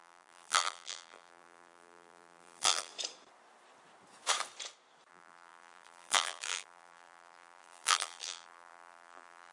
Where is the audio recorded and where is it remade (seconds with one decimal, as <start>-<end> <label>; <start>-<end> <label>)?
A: 0.0-2.9 remade; 2.9-5.1 recorded; 5.1-9.5 remade